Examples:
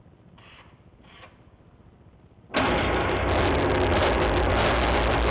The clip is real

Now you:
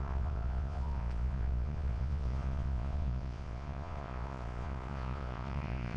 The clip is fake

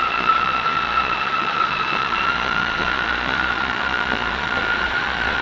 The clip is fake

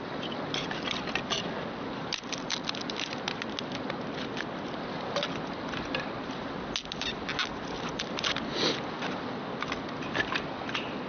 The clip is real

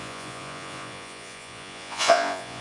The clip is fake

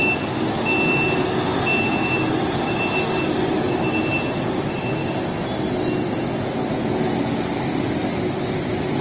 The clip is real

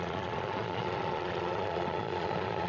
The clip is fake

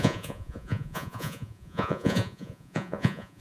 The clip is fake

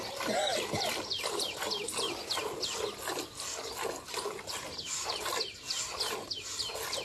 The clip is real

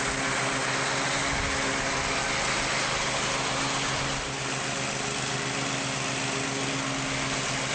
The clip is real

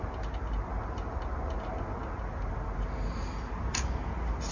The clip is real